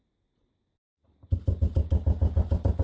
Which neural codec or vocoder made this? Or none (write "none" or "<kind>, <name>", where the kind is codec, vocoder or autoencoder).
none